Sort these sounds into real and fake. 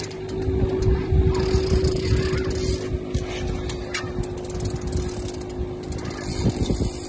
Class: real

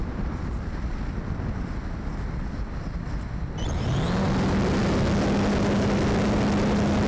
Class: real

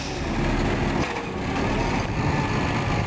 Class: real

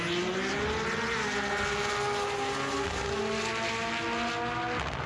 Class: real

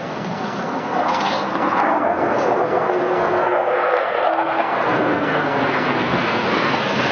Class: fake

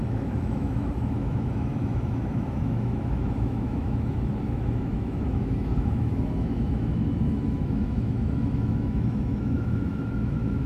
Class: fake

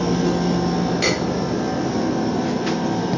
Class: real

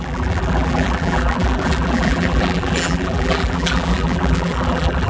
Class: fake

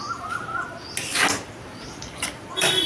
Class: real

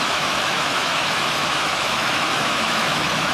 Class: fake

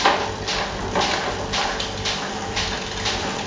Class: real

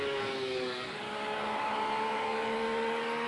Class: fake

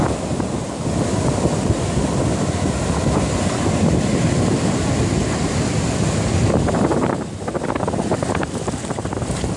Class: real